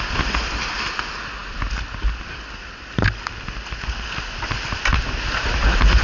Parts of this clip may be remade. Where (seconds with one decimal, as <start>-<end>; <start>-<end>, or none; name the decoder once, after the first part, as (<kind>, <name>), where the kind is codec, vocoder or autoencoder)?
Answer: none